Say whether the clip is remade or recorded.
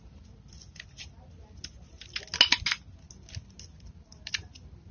recorded